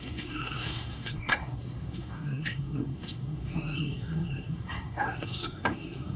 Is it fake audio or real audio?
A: fake